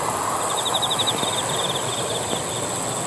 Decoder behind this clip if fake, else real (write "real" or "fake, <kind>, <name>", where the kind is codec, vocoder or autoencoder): real